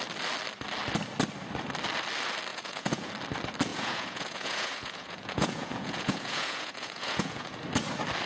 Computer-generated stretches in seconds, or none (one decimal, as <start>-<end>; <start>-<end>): 2.5-3.1; 3.7-7.6